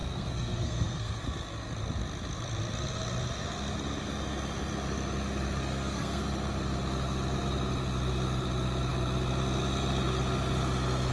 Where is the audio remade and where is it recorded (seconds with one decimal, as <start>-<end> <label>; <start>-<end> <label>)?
0.0-1.2 remade; 1.2-5.6 recorded; 5.6-6.2 remade; 6.2-11.1 recorded